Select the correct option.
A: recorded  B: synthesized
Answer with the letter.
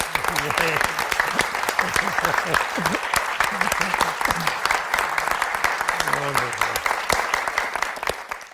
A